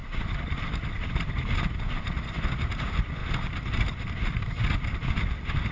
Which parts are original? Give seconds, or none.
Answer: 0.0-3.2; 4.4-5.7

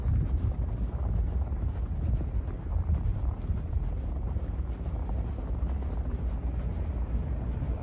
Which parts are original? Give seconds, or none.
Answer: 0.0-3.1; 3.9-7.8

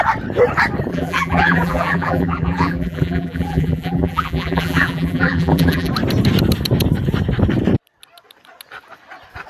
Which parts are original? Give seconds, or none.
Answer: 0.0-0.9; 5.9-9.5

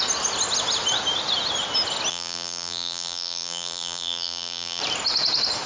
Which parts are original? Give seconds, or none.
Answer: 0.0-2.1; 4.8-5.7

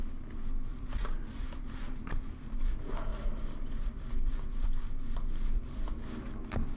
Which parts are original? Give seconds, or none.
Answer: 0.0-0.7; 2.1-3.1; 4.7-6.8

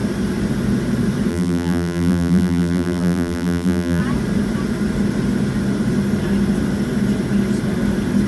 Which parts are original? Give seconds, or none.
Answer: 0.0-1.3; 4.0-8.3

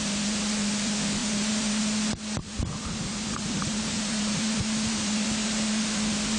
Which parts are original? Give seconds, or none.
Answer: 0.0-1.2; 1.8-2.8; 5.8-6.4